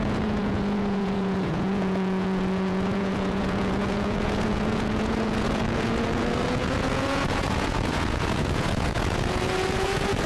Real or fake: fake